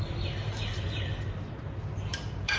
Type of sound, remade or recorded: recorded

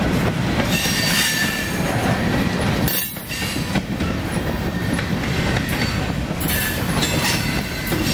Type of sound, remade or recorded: recorded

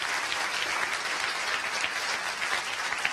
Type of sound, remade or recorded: remade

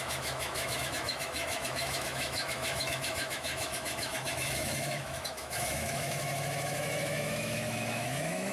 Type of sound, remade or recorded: remade